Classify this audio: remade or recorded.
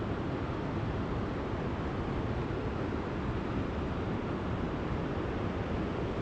recorded